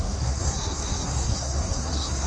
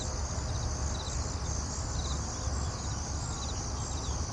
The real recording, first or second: second